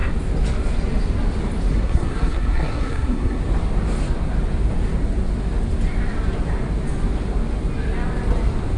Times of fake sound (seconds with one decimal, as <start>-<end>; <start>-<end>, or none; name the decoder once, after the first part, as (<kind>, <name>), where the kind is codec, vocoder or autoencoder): 1.7-3.4 (codec, SNAC)